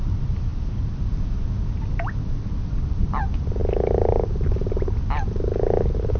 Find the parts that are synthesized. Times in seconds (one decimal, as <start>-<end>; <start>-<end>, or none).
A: none